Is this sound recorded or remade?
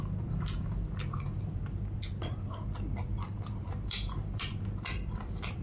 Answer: remade